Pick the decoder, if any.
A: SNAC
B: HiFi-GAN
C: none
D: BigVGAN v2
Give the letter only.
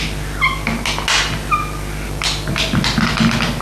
C